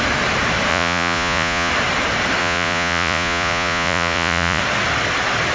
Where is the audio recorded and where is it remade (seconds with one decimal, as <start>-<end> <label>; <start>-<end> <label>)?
0.0-0.7 recorded; 0.7-1.7 remade; 1.7-2.4 recorded; 2.4-4.6 remade; 4.6-5.5 recorded